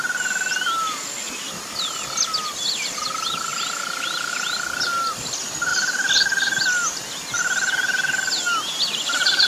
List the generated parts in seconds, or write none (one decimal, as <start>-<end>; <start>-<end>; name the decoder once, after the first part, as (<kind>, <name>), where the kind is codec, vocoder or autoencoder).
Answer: none